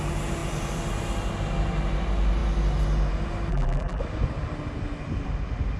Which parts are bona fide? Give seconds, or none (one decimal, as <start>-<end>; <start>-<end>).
0.0-3.5; 4.0-5.8